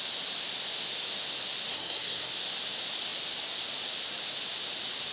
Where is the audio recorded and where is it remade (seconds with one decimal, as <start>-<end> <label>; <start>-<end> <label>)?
0.0-1.7 recorded; 1.7-2.3 remade; 2.3-5.1 recorded